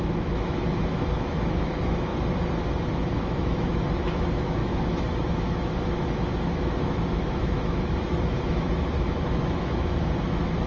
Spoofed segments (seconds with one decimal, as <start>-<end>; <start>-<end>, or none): 0.0-2.1; 2.9-10.7